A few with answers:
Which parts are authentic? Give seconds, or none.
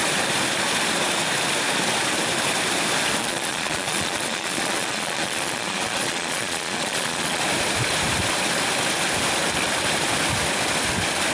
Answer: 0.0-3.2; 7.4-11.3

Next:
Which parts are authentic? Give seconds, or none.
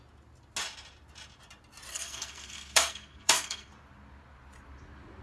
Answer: 0.0-1.9; 3.7-5.2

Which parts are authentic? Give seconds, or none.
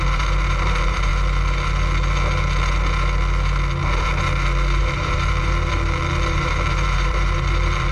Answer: 1.1-4.8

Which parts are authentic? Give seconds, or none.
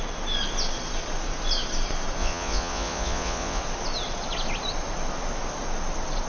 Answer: 0.0-2.2; 3.6-6.3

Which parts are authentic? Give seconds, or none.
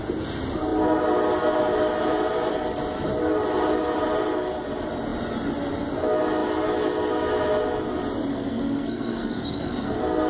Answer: 0.0-8.3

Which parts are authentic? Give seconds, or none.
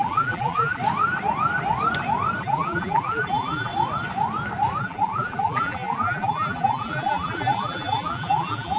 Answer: 0.8-2.4; 3.7-4.8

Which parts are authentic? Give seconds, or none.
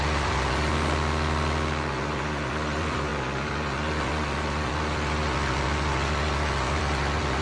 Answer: 0.7-1.9